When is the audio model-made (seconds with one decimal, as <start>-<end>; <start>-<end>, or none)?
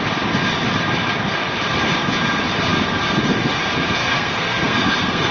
4.0-5.3